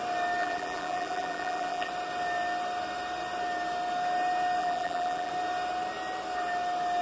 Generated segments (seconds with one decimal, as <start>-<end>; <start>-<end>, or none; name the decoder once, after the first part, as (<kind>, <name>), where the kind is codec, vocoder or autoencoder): 0.4-1.9 (vocoder, BigVGAN v2); 4.6-5.3